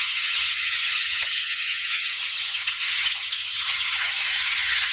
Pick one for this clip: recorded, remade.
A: remade